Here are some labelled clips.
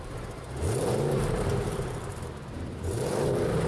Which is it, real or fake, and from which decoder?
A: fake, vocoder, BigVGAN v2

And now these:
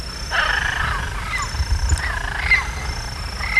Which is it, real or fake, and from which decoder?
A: real